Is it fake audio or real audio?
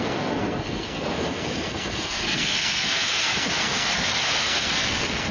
fake